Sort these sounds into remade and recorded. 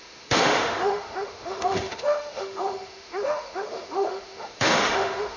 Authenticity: remade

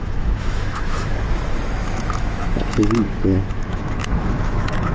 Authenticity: remade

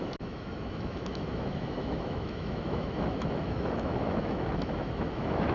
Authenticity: remade